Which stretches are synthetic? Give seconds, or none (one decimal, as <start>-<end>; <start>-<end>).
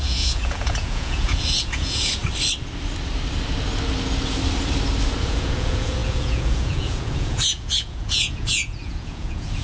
0.0-2.2; 5.2-9.6